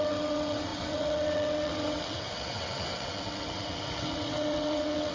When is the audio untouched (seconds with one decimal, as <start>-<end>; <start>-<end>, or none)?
none